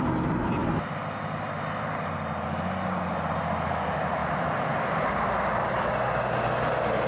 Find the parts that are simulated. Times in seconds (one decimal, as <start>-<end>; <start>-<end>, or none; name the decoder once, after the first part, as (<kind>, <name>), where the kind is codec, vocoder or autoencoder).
4.2-5.9 (vocoder, BigVGAN v2)